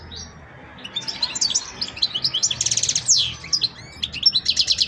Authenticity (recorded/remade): recorded